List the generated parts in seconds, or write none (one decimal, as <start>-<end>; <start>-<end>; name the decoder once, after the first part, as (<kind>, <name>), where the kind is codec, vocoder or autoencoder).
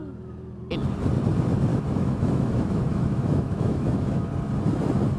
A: 1.7-4.3 (autoencoder, DAC-VAE)